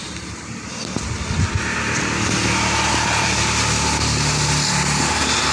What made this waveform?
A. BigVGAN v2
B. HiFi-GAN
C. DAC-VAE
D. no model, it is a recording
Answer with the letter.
D